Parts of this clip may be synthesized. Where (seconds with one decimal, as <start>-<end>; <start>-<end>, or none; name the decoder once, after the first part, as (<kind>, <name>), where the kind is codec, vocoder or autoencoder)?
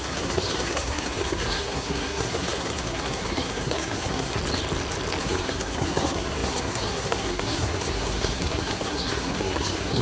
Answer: 0.0-4.4 (codec, SNAC); 5.2-10.0